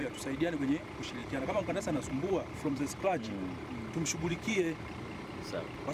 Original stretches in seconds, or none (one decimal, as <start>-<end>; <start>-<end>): 0.0-1.2; 3.3-4.3; 5.2-5.9